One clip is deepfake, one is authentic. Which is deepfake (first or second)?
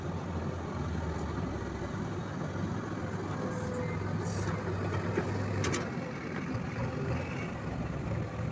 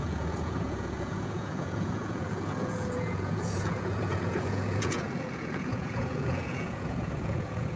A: second